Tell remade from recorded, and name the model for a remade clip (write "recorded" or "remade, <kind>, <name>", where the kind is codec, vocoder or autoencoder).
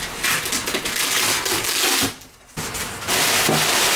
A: recorded